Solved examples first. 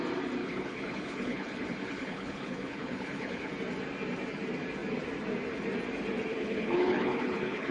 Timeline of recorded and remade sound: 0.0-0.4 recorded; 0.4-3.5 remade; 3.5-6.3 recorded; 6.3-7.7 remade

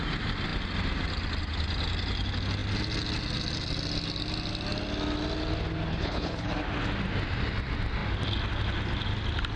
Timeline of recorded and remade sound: 0.0-5.9 recorded; 5.9-6.5 remade; 6.5-9.6 recorded